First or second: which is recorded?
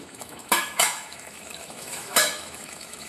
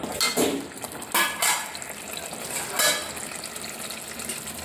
second